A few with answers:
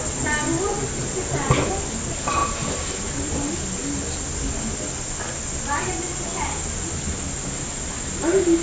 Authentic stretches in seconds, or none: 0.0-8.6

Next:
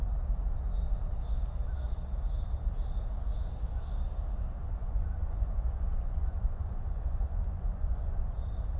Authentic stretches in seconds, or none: 0.0-4.6; 8.2-8.8

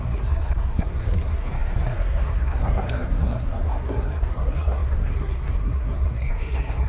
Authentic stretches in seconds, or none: none

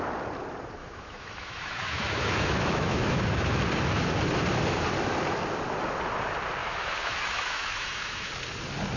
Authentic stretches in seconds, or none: 0.0-0.8; 3.6-6.6; 8.3-9.0

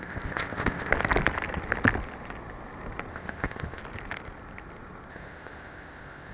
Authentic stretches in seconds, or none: 0.9-3.1; 3.8-5.1

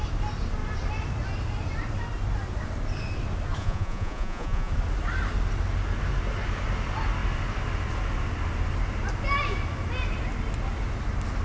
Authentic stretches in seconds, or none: 0.0-3.6; 4.7-11.4